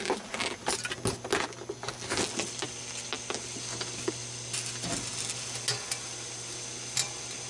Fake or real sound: real